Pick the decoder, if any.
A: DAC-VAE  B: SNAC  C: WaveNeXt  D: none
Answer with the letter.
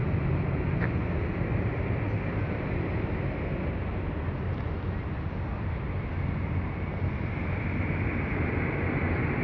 D